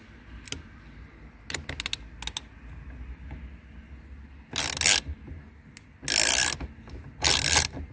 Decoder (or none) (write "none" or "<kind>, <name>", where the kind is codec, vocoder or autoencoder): none